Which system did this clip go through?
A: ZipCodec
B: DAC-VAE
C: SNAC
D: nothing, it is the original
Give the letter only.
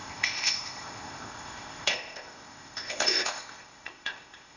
A